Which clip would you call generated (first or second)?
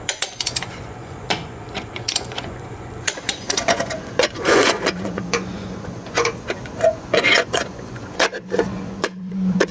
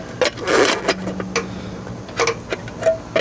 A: first